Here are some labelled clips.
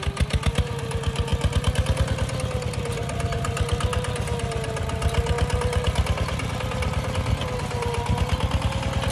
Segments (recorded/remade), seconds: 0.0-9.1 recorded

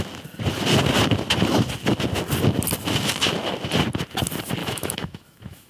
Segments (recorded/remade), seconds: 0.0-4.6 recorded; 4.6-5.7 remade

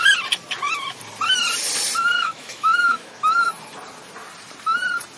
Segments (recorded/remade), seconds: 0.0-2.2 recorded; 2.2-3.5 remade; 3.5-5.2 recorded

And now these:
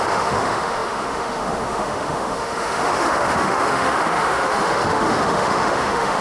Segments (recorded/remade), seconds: 0.0-6.2 remade